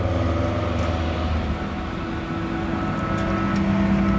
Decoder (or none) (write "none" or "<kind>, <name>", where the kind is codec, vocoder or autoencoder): none